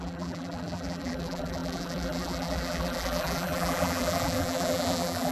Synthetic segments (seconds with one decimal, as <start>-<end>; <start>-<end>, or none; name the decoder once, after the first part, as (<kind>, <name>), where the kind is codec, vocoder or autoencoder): 0.0-5.3 (vocoder, BigVGAN v2)